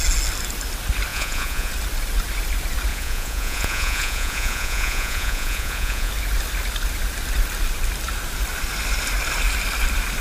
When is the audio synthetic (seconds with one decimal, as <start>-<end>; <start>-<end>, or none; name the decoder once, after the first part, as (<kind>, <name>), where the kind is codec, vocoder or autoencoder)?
1.1-1.7 (vocoder, Vocos); 2.9-6.1